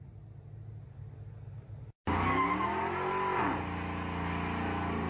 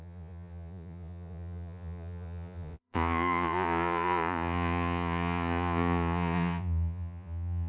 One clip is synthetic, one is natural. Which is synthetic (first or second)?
second